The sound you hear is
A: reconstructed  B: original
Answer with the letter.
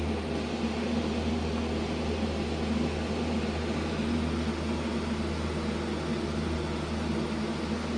B